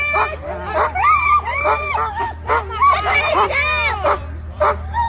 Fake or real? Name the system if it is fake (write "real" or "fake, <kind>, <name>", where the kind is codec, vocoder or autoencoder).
fake, vocoder, BigVGAN v2